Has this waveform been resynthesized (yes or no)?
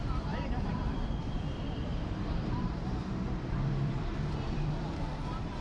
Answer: yes